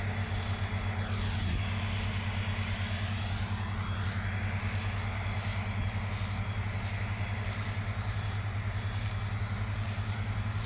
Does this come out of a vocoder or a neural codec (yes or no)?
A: no